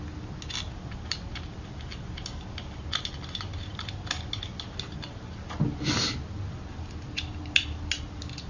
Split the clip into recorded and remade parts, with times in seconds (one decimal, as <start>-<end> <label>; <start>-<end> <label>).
0.0-0.8 recorded; 0.8-1.5 remade; 1.5-8.5 recorded